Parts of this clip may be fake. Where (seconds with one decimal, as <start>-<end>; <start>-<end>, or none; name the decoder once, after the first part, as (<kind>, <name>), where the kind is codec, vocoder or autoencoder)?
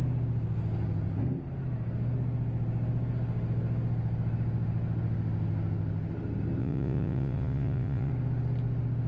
6.6-8.1 (vocoder, Vocos)